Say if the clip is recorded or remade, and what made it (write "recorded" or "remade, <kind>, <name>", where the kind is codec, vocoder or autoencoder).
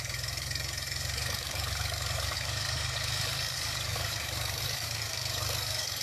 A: remade, codec, DAC